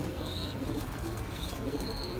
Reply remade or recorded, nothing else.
remade